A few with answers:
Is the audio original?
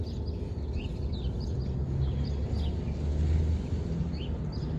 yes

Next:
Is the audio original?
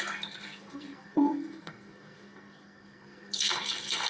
no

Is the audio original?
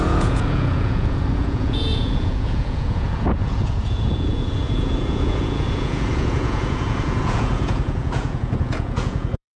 no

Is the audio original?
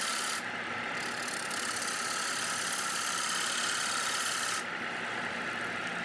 yes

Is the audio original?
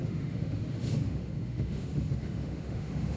no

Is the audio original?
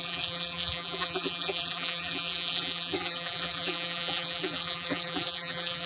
no